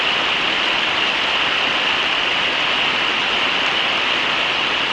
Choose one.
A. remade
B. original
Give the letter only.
B